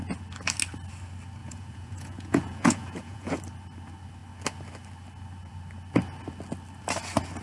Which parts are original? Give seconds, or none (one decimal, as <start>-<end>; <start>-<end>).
0.0-1.4; 3.4-7.4